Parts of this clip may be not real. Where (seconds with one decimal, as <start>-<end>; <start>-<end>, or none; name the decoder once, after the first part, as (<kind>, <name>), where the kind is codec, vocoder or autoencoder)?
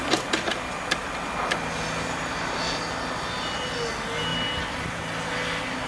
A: none